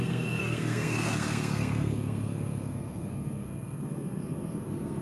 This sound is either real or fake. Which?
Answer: fake